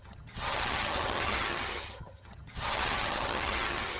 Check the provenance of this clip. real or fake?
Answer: fake